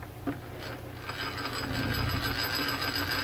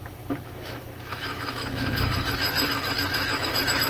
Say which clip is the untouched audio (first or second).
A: first